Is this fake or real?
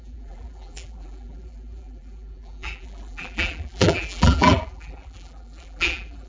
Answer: fake